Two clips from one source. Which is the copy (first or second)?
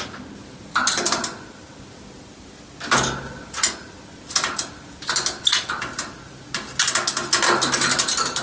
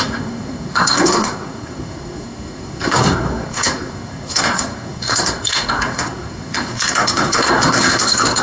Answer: second